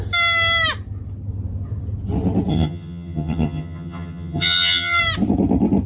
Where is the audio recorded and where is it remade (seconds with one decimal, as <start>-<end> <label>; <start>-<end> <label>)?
0.0-2.5 recorded; 2.5-5.0 remade; 5.0-5.9 recorded